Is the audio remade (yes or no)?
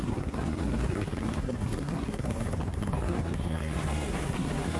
yes